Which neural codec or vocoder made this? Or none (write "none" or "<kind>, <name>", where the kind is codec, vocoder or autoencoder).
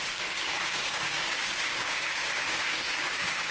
codec, DAC